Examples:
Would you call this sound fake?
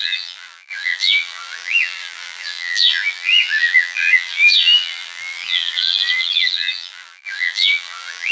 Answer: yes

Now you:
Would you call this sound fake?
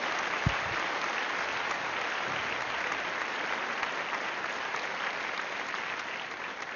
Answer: no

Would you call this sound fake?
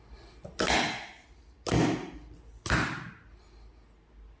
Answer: no